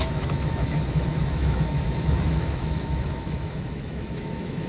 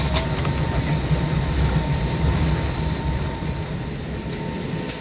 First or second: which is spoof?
first